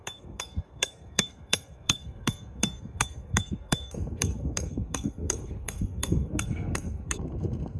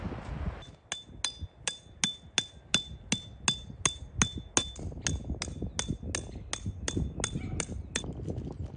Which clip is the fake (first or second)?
first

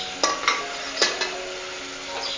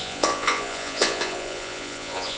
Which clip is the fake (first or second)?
second